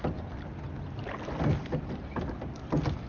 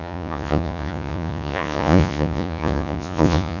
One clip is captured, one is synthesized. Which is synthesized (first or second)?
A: second